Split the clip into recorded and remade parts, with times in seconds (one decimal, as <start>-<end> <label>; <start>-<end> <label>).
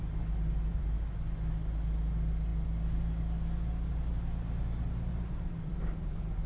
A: 0.0-0.7 recorded; 0.7-1.2 remade; 1.2-5.1 recorded; 5.1-6.5 remade